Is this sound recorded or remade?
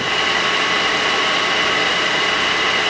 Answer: recorded